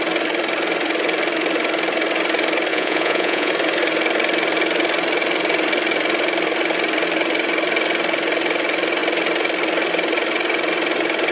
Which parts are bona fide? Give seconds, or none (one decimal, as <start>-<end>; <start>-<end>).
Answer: 0.0-2.7; 3.5-11.3